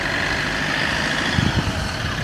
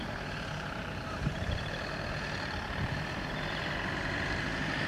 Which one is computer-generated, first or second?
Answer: second